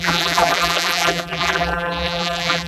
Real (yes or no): no